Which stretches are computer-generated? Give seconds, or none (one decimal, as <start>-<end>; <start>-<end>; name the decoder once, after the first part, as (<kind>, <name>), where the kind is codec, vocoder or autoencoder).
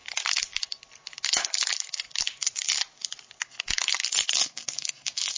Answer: 4.3-5.4 (codec, SNAC)